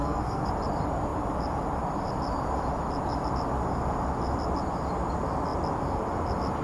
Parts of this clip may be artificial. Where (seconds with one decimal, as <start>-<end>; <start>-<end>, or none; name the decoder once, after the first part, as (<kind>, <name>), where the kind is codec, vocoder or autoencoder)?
0.0-0.5 (codec, SNAC)